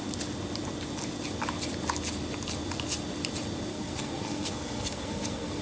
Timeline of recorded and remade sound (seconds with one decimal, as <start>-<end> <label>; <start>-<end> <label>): 0.0-3.7 recorded; 3.7-5.6 remade